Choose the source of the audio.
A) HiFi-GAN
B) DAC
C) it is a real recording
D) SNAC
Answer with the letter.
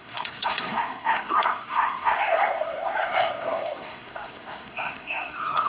D